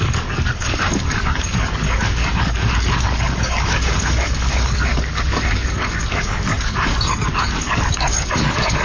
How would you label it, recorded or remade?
remade